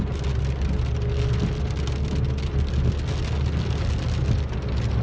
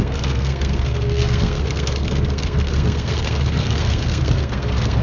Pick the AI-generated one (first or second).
second